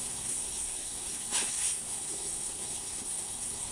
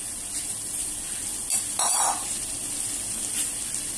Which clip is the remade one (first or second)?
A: first